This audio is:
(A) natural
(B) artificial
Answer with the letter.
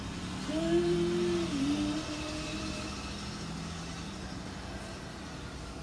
A